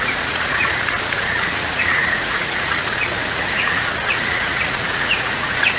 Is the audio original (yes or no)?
no